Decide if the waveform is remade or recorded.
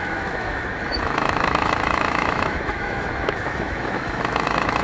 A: remade